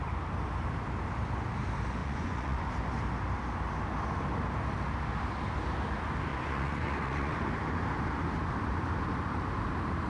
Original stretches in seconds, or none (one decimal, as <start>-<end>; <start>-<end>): 0.0-2.0; 2.7-6.3; 7.5-10.1